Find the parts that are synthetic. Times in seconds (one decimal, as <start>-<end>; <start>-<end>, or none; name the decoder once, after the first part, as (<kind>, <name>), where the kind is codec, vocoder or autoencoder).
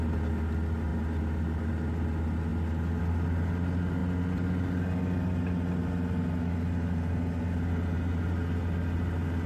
none